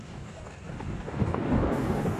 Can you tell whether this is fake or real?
fake